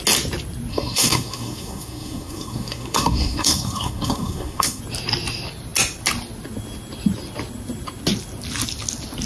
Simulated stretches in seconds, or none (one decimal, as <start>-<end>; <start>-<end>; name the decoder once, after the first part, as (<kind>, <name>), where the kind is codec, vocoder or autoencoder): 0.7-4.8 (codec, SNAC)